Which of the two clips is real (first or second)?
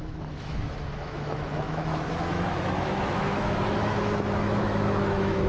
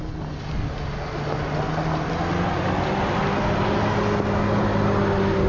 second